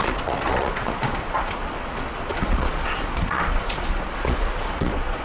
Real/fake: fake